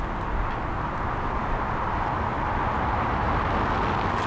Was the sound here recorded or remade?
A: recorded